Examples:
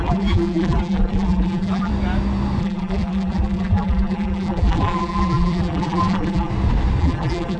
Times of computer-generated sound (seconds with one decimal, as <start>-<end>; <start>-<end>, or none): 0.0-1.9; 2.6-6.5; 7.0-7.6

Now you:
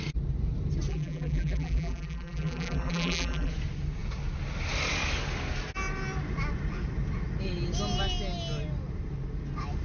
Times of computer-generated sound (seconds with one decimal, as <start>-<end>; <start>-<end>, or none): 0.9-3.5

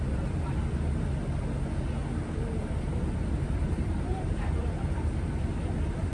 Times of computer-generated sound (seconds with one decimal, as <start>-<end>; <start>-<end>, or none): 2.0-5.3

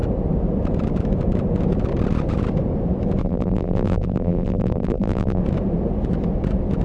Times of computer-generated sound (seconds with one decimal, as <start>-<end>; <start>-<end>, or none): 3.2-5.4

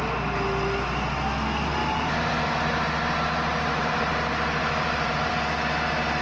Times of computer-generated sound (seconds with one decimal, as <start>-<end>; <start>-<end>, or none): 1.8-2.6; 3.5-4.1; 4.6-5.3

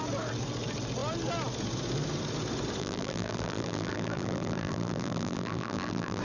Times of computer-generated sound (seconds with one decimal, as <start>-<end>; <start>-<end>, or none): 2.8-6.2